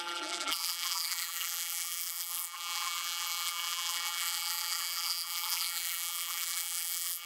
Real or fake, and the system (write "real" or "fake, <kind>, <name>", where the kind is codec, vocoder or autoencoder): fake, vocoder, BigVGAN v2